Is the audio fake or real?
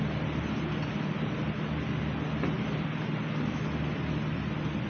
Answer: real